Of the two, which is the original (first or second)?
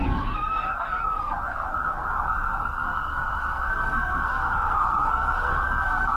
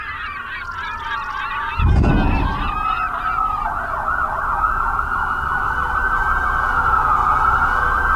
second